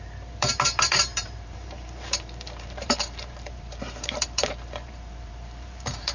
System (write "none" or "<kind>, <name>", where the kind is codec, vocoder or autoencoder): vocoder, BigVGAN v2